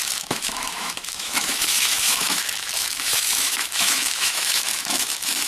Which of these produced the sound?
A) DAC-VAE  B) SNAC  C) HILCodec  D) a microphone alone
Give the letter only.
A